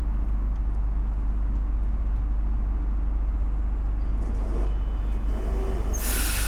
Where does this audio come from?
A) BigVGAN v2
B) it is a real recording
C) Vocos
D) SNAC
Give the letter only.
B